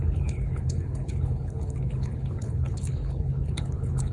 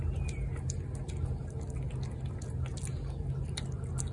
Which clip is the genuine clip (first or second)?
second